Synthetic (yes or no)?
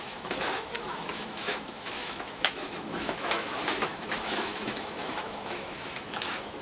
yes